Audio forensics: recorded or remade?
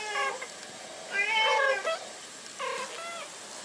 recorded